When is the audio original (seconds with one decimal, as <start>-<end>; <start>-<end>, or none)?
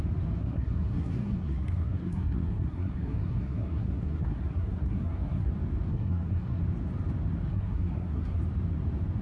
0.0-0.4; 5.5-5.9; 6.6-7.5; 8.4-9.2